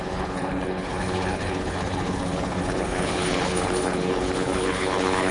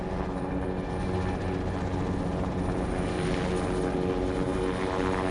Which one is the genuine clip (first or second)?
second